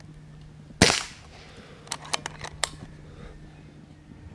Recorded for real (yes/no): yes